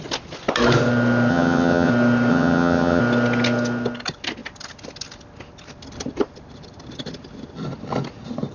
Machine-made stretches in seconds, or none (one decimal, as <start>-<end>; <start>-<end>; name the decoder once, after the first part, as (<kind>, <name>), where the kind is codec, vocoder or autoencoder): 1.3-1.9 (vocoder, HiFi-GAN); 2.3-3.0